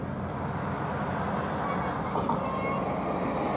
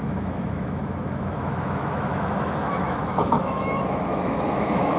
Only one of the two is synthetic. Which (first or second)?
second